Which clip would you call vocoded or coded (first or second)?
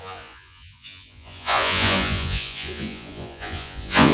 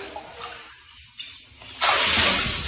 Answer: first